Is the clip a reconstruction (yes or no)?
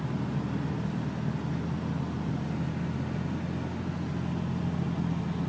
no